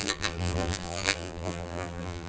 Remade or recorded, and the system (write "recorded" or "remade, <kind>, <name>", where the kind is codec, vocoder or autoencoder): remade, vocoder, BigVGAN v2